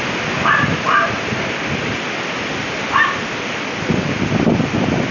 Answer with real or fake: real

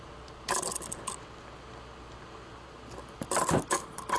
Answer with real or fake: real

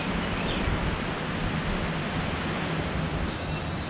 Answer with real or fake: real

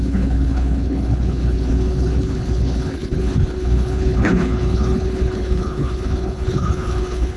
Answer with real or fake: fake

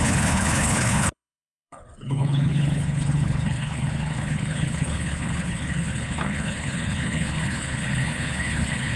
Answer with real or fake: fake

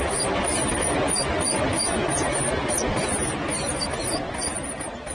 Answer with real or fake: real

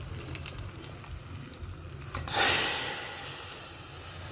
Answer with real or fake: real